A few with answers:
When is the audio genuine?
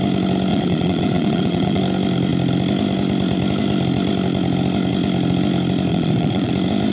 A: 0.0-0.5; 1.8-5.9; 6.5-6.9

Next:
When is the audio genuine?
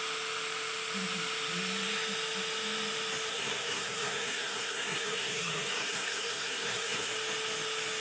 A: 0.0-3.3; 7.1-8.0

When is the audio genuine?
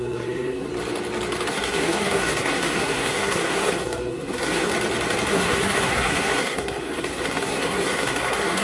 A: 0.7-1.5; 4.7-5.3